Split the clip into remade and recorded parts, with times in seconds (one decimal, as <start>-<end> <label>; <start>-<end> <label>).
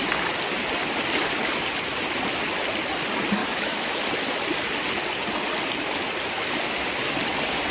0.0-3.4 recorded; 3.4-4.0 remade; 4.0-7.7 recorded